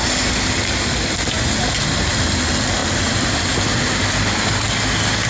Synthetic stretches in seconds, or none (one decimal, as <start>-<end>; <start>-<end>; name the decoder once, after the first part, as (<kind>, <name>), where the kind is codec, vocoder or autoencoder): none

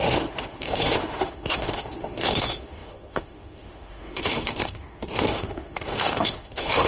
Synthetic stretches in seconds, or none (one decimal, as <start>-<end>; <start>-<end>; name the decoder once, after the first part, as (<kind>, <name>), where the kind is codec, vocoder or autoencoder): 0.0-6.9 (autoencoder, DAC-VAE)

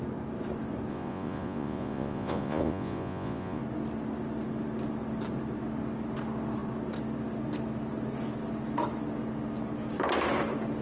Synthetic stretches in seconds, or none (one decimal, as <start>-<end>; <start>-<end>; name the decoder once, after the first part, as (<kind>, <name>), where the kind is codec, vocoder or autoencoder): 0.9-3.6 (vocoder, Vocos)

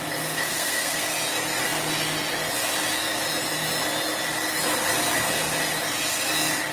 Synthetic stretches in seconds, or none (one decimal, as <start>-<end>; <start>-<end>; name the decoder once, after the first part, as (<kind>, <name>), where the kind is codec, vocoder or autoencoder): 0.5-1.0 (codec, SNAC)